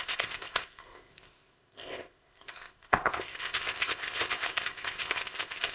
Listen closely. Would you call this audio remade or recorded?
remade